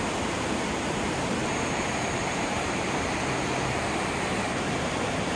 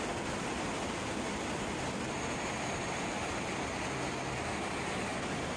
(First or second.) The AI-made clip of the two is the first